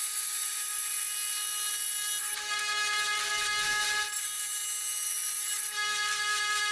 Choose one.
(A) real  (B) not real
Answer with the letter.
A